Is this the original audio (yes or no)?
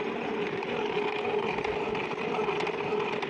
yes